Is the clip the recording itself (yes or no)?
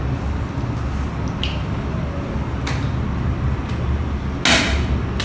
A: yes